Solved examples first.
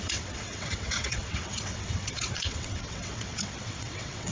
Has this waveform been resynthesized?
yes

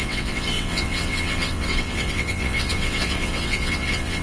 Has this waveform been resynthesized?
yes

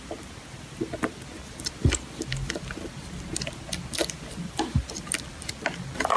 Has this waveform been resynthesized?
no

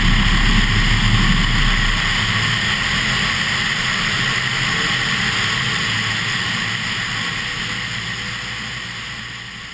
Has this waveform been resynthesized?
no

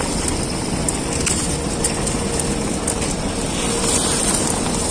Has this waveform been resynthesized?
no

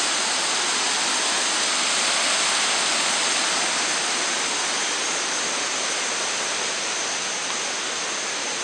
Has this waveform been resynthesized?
no